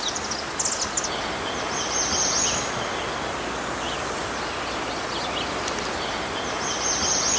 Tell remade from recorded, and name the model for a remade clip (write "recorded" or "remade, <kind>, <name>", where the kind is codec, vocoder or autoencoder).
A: recorded